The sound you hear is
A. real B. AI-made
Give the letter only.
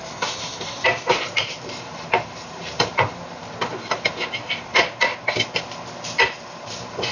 B